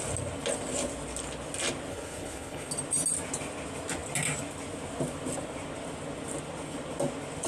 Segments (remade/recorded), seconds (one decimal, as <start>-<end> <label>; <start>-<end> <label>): 0.0-1.9 recorded; 1.9-2.7 remade; 2.7-7.5 recorded